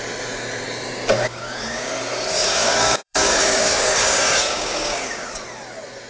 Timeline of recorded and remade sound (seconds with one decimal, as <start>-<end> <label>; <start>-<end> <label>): 0.0-1.3 recorded; 1.3-1.9 remade; 1.9-2.3 recorded; 2.3-5.3 remade; 5.3-6.1 recorded